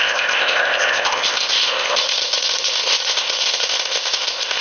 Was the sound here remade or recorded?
remade